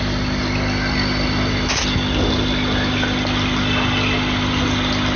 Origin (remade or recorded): recorded